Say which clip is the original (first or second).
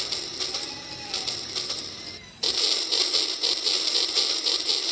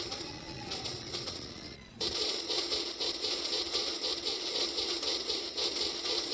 first